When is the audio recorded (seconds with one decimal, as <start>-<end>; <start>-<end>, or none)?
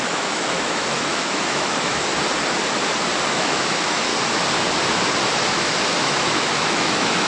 2.1-3.3; 4.1-6.0